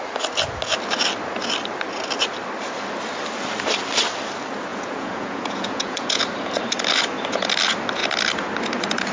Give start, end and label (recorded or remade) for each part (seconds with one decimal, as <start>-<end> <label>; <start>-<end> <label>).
0.0-4.7 recorded; 4.7-6.2 remade; 6.2-9.1 recorded